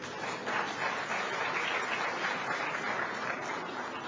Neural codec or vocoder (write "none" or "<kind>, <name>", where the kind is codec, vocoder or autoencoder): none